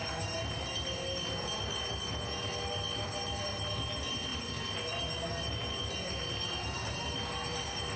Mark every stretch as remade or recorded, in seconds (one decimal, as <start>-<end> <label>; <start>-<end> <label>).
0.0-8.0 recorded